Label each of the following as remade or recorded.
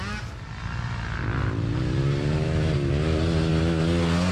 recorded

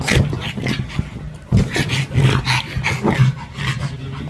recorded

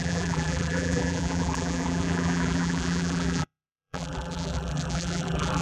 remade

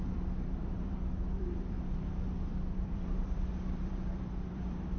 remade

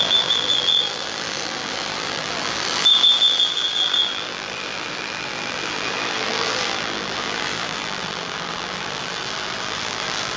remade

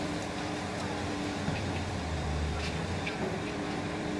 remade